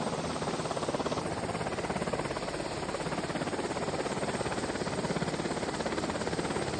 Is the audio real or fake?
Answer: real